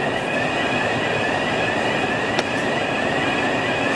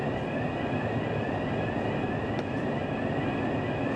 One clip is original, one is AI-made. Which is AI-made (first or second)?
first